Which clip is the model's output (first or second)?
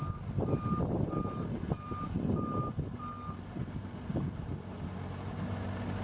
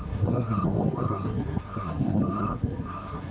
second